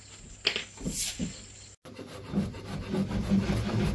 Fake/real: real